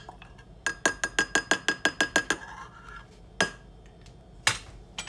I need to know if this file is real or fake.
real